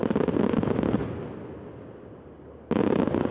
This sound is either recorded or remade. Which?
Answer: recorded